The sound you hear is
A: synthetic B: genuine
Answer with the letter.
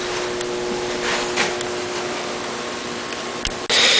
B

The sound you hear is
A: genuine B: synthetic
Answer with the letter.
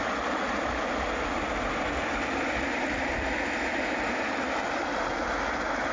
A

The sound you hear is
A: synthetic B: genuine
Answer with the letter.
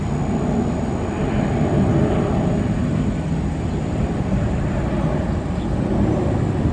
B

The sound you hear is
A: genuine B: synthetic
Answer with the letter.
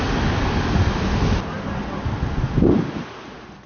A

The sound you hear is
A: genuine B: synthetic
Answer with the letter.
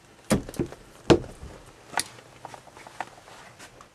A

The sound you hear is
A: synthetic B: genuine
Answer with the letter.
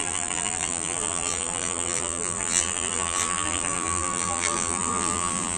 A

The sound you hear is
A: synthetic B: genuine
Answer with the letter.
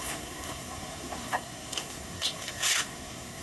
A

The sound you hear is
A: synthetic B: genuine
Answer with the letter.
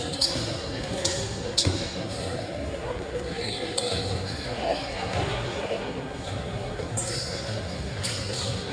A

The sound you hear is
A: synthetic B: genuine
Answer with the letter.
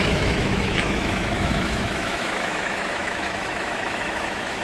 A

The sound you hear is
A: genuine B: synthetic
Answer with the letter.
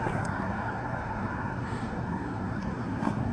B